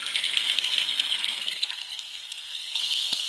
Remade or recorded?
remade